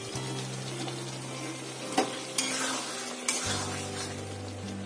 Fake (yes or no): no